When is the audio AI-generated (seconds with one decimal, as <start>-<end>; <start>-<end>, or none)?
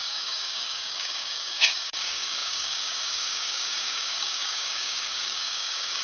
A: 0.0-6.0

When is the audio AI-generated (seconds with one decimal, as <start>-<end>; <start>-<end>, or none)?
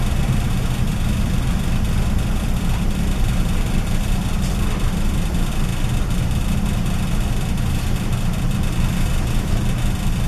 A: 0.0-5.7; 9.5-10.3